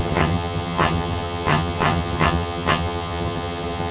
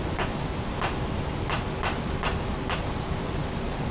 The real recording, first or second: second